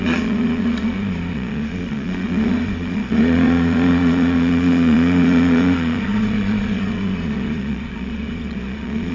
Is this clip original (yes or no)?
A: no